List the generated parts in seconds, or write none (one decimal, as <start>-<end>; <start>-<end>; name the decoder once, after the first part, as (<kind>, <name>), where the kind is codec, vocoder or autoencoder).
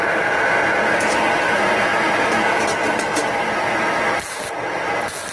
none